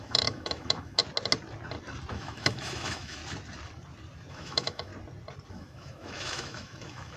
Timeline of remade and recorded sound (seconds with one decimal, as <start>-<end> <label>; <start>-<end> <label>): 0.0-1.0 remade; 1.0-2.1 recorded; 2.1-3.2 remade; 3.2-4.3 recorded; 4.3-4.9 remade; 4.9-5.5 recorded; 5.5-7.2 remade